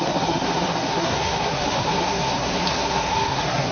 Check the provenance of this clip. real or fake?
fake